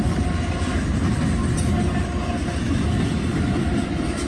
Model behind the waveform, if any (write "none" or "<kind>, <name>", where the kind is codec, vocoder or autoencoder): none